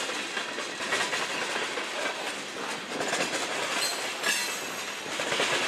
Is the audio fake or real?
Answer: real